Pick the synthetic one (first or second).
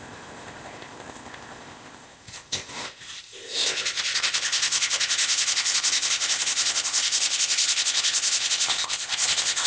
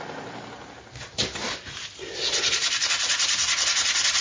first